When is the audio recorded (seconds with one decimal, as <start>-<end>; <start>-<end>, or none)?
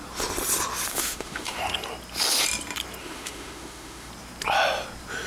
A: 0.0-0.9; 1.6-3.0; 4.1-5.3